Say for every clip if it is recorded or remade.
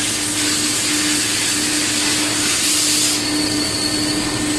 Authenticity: recorded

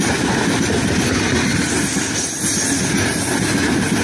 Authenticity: recorded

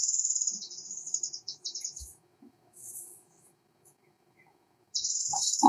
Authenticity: remade